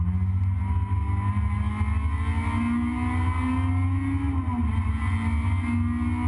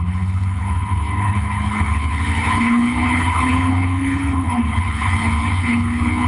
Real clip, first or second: first